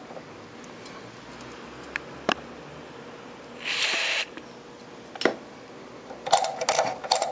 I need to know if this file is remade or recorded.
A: recorded